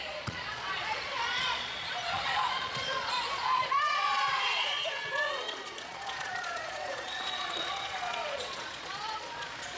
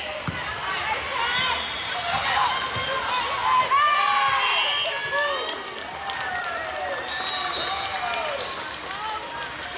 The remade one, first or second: first